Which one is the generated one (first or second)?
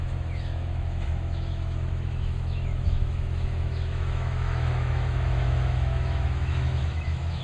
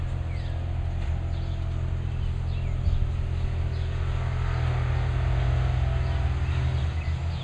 first